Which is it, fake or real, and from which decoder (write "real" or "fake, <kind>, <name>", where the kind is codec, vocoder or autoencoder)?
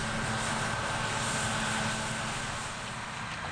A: real